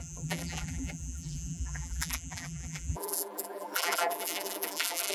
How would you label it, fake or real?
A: fake